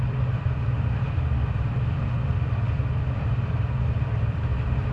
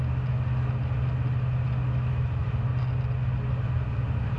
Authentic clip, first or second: second